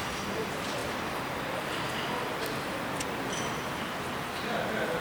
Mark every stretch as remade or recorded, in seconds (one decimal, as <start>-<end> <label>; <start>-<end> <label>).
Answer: 0.0-5.0 recorded